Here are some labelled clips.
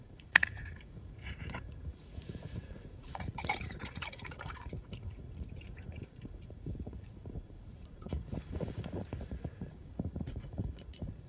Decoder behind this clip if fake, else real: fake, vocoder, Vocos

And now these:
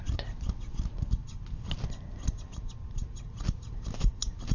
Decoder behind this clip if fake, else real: real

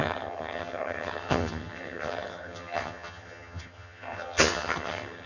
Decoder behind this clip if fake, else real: fake, vocoder, HiFi-GAN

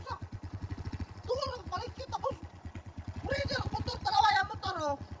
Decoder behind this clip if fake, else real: fake, vocoder, Vocos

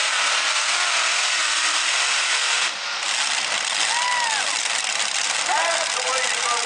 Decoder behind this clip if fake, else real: real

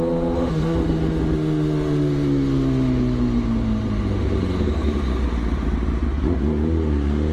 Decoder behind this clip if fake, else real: real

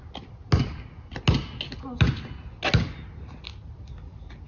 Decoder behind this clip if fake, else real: real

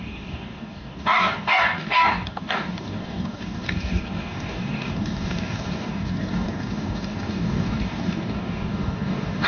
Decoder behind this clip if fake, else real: fake, codec, DAC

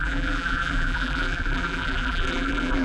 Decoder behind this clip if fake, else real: fake, vocoder, BigVGAN v2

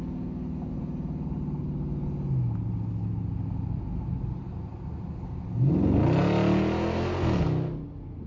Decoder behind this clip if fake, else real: real